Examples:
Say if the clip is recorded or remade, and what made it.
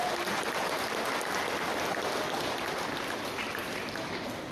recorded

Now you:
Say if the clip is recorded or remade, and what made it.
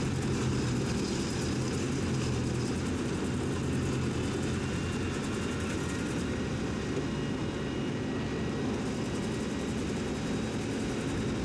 recorded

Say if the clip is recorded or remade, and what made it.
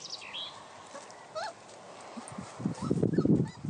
recorded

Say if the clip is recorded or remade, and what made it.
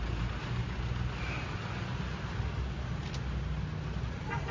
recorded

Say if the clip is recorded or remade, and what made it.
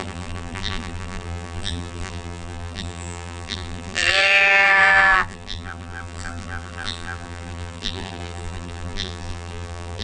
remade, vocoder, BigVGAN v2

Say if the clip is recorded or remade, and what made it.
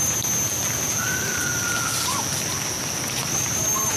recorded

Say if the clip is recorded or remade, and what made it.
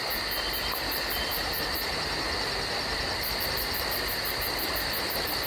recorded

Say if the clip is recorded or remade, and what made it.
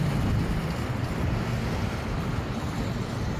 recorded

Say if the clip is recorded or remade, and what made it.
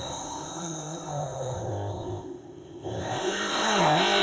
remade, codec, ZipCodec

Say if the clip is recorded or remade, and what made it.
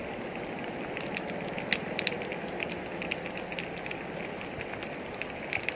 recorded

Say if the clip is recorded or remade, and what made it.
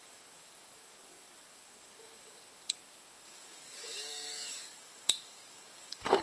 remade, codec, DAC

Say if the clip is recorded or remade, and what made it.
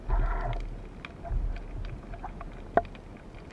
recorded